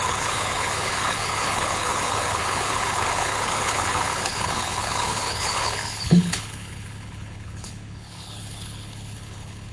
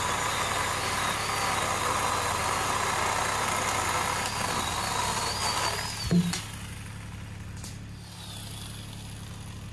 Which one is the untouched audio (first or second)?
second